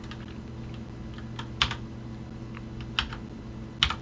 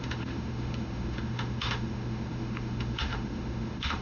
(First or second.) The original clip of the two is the first